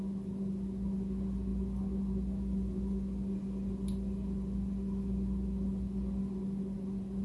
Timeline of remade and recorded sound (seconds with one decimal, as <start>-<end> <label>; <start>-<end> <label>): 0.0-7.2 recorded